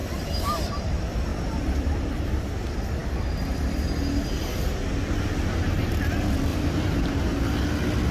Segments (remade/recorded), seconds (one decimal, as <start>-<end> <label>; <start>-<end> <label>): 0.0-0.9 remade; 0.9-1.3 recorded; 1.3-2.4 remade; 2.4-6.5 recorded; 6.5-7.4 remade; 7.4-8.1 recorded